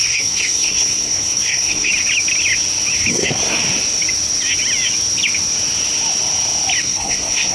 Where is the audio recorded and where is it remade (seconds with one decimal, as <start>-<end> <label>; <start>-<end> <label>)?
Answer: 0.0-1.9 remade; 1.9-3.1 recorded; 3.1-3.6 remade; 3.6-6.8 recorded; 6.8-7.5 remade